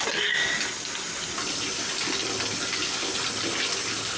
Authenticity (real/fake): real